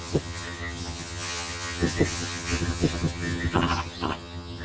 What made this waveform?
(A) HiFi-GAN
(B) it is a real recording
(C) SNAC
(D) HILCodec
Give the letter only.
A